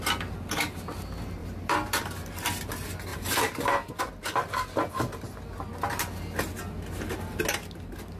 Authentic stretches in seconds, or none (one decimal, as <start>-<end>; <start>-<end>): 0.0-1.4; 2.7-3.1; 4.0-8.2